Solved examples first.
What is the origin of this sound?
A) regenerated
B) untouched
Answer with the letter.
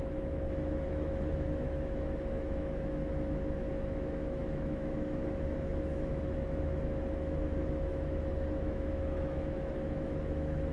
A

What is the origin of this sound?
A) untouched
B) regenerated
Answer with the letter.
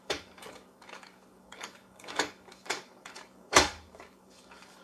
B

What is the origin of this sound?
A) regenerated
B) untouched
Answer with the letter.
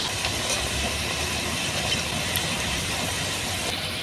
B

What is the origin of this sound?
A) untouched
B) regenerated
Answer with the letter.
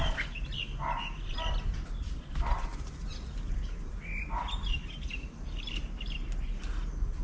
A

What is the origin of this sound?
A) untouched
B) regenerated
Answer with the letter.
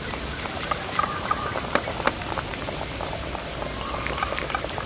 B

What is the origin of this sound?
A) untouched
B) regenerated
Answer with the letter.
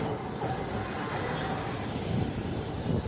A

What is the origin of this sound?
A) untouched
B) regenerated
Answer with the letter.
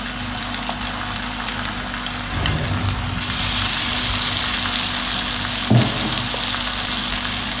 A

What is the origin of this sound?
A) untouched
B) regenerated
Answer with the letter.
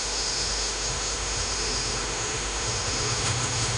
B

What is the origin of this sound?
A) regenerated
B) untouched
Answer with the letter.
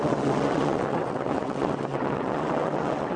A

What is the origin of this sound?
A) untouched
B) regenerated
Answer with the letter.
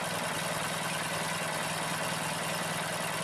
A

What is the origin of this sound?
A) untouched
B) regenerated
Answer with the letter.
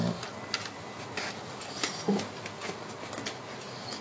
A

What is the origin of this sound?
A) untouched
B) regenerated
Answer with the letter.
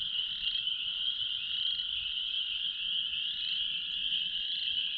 A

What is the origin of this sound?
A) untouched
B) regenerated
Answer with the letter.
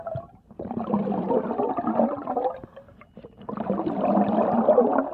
A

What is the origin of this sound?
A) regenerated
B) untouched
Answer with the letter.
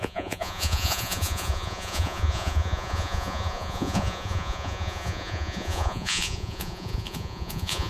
A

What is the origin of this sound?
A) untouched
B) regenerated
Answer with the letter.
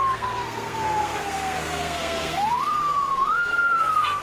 B